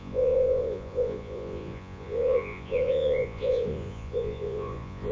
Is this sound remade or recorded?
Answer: remade